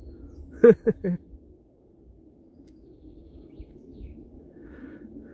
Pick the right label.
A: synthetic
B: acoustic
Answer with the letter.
A